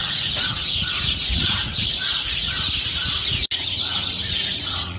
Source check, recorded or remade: remade